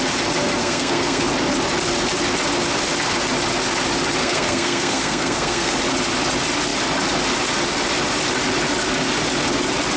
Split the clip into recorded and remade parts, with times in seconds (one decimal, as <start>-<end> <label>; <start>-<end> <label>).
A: 0.0-0.6 recorded; 0.6-1.3 remade; 1.3-4.2 recorded; 4.2-5.7 remade; 5.7-10.0 recorded